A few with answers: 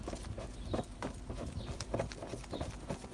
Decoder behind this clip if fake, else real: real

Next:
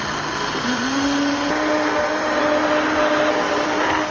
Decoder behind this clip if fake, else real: real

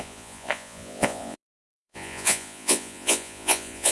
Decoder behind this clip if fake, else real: fake, vocoder, Vocos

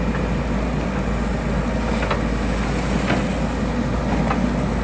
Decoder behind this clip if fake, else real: real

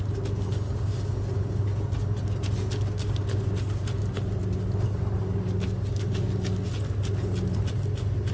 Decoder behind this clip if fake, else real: real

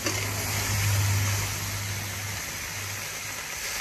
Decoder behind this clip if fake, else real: real